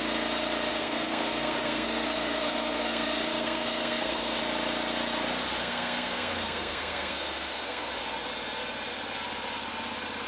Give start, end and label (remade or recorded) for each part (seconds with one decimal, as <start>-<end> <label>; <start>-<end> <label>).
0.0-0.7 recorded; 0.7-4.4 remade; 4.4-5.6 recorded; 5.6-7.9 remade; 7.9-10.3 recorded

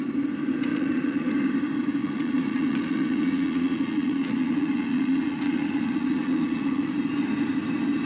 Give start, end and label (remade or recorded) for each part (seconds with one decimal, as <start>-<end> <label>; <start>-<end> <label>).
0.0-0.7 recorded; 0.7-1.3 remade; 1.3-2.0 recorded; 2.0-6.9 remade; 6.9-8.1 recorded

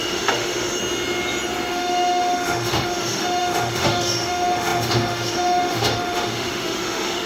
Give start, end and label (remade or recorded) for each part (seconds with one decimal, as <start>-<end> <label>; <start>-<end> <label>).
0.0-0.8 remade; 0.8-1.7 recorded; 1.7-7.3 remade

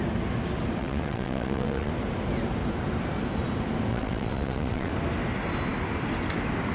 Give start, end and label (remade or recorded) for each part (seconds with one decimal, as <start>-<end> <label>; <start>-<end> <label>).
0.0-0.8 recorded; 0.8-1.9 remade; 1.9-3.9 recorded; 3.9-4.9 remade; 4.9-6.7 recorded

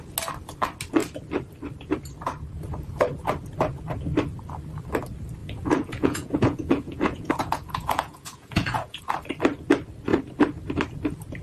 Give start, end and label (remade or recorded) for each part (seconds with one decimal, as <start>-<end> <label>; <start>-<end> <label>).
0.0-5.4 recorded; 5.4-9.0 remade; 9.0-11.4 recorded

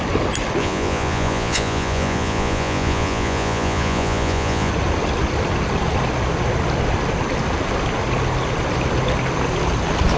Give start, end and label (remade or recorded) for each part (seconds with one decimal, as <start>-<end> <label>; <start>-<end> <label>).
0.0-0.6 recorded; 0.6-4.7 remade; 4.7-10.2 recorded

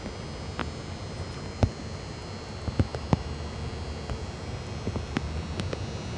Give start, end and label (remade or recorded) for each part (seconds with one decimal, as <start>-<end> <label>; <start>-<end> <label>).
0.0-6.2 recorded